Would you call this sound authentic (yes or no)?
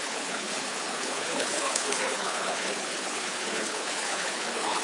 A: no